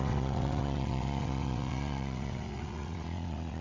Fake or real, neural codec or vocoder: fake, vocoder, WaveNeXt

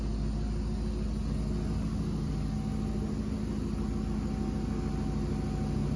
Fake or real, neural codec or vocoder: real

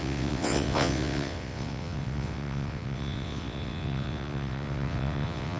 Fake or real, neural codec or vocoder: fake, vocoder, WaveNeXt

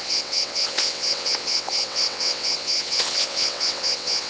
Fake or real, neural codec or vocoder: fake, vocoder, WaveNeXt